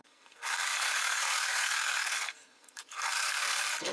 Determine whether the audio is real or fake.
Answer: fake